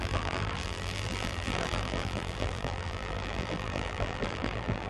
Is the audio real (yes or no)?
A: no